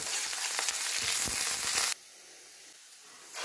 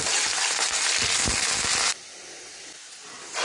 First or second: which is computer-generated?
second